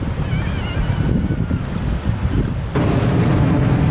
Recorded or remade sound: recorded